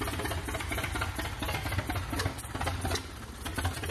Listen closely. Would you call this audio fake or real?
real